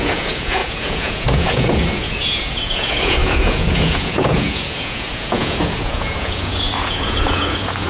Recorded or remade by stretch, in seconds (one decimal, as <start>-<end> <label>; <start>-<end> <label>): 0.0-7.9 remade